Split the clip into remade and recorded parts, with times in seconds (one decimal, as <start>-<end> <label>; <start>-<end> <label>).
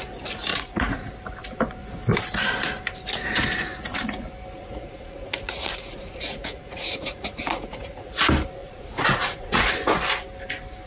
0.0-0.5 recorded; 0.5-1.1 remade; 1.1-4.6 recorded; 4.6-8.1 remade; 8.1-8.6 recorded; 8.6-9.7 remade; 9.7-10.9 recorded